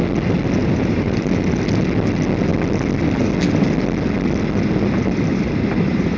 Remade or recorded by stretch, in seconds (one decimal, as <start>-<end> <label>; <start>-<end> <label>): 0.0-0.6 recorded; 0.6-1.3 remade; 1.3-5.3 recorded; 5.3-6.2 remade